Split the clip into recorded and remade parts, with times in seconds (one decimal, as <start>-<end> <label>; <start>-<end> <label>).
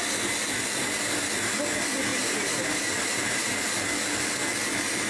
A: 0.0-2.1 recorded; 2.1-3.7 remade; 3.7-5.1 recorded